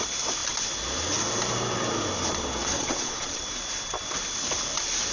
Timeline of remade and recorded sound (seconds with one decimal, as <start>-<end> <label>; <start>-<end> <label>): 0.0-2.6 recorded; 2.6-3.4 remade; 3.4-5.1 recorded